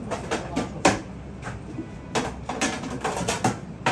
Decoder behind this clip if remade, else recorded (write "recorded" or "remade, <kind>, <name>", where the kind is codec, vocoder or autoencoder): recorded